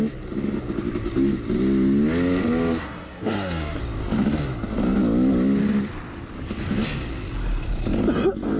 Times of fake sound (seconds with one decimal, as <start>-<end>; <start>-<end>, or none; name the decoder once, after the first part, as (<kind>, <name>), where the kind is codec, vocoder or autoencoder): 2.8-3.8 (codec, SNAC)